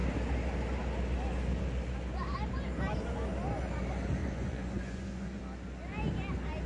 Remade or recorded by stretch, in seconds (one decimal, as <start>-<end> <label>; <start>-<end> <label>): 0.0-4.2 recorded; 4.2-5.4 remade; 5.4-6.7 recorded